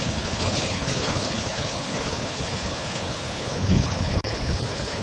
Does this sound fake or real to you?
fake